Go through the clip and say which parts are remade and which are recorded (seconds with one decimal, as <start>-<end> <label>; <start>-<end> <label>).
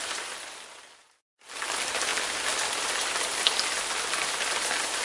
0.0-5.0 recorded